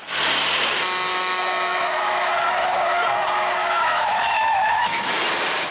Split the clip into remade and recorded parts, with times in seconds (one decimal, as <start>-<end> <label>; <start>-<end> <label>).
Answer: 0.0-1.1 recorded; 1.1-2.3 remade; 2.3-3.6 recorded; 3.6-5.2 remade; 5.2-5.7 recorded